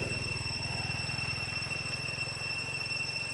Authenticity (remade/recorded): recorded